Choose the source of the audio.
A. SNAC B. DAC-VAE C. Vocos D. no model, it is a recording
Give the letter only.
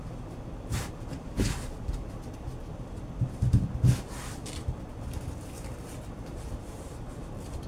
D